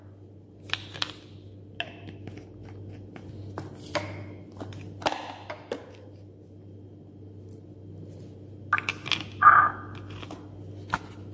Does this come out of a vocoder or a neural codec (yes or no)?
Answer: no